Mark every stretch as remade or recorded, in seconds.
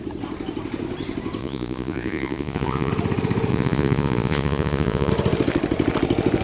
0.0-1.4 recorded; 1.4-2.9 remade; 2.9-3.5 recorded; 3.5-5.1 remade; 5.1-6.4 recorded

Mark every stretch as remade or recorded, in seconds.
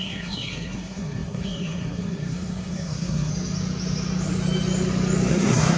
0.0-3.3 remade; 3.3-5.3 recorded; 5.3-5.8 remade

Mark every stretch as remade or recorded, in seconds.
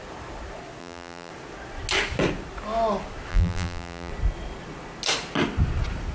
0.0-0.8 recorded; 0.8-1.3 remade; 1.3-3.3 recorded; 3.3-4.1 remade; 4.1-6.1 recorded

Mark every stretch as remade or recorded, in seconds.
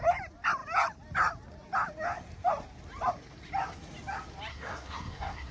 0.0-4.5 recorded; 4.5-5.5 remade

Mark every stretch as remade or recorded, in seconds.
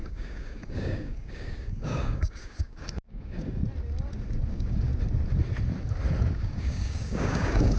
0.0-3.6 remade; 3.6-4.5 recorded; 4.5-4.9 remade; 4.9-6.3 recorded; 6.3-7.8 remade